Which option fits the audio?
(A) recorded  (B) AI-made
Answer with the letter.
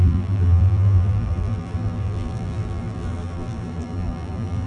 B